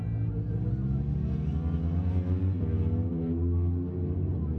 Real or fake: real